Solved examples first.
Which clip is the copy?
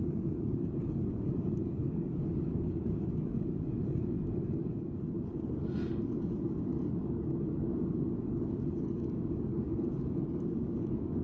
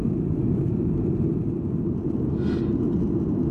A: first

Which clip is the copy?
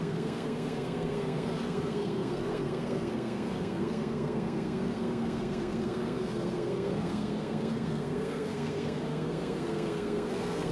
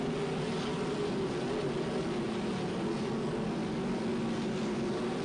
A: first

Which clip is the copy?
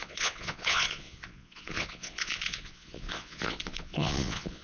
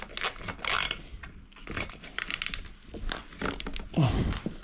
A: first